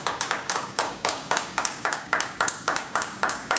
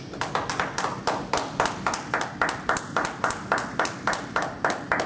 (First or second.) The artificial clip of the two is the first